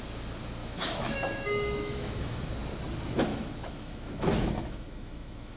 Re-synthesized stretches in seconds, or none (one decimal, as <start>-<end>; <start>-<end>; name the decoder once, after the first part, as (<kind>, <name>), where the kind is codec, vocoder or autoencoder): 0.6-2.5 (autoencoder, DAC-VAE); 3.3-5.6